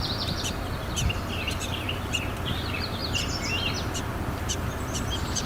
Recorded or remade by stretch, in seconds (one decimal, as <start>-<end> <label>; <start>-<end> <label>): 0.0-3.0 remade; 3.0-3.7 recorded; 3.7-5.5 remade